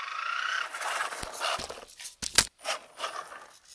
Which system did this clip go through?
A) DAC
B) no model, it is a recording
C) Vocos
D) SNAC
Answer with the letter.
B